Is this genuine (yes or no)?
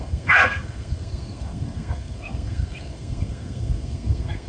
no